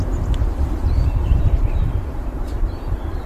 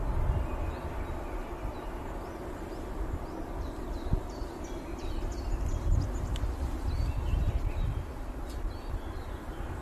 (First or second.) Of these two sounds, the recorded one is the second